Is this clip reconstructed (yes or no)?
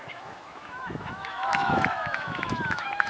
yes